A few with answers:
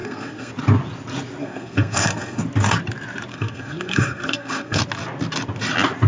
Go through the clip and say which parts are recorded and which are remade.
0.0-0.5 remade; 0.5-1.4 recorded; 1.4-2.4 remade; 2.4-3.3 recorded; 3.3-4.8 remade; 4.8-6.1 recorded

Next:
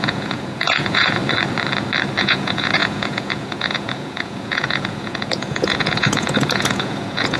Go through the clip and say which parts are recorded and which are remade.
0.0-1.2 remade; 1.2-2.2 recorded; 2.2-7.4 remade

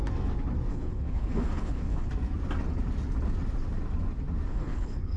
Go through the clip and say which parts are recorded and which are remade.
0.0-0.7 recorded; 0.7-2.1 remade; 2.1-4.5 recorded; 4.5-5.2 remade

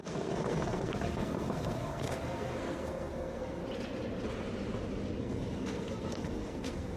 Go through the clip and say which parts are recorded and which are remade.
0.0-3.6 remade; 3.6-5.2 recorded; 5.2-7.0 remade